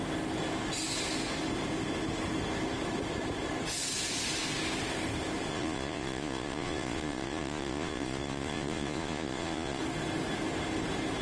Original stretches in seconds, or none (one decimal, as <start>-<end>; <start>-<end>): 0.0-5.5; 9.8-11.2